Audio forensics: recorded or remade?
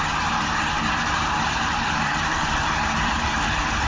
remade